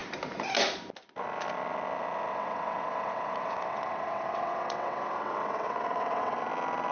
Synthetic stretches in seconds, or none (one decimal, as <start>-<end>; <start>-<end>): 2.3-6.4